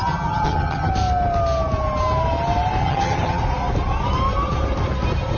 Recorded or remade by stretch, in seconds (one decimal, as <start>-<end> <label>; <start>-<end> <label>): 0.0-0.9 remade; 0.9-2.8 recorded; 2.8-3.4 remade; 3.4-5.4 recorded